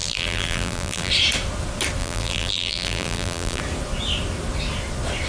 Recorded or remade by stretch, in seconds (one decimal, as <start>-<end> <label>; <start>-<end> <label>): 0.0-1.1 remade; 1.1-2.0 recorded; 2.0-3.6 remade; 3.6-5.3 recorded